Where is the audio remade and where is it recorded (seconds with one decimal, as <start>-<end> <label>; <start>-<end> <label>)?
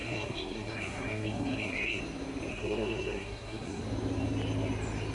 0.0-2.0 remade; 2.0-2.5 recorded; 2.5-3.8 remade; 3.8-5.1 recorded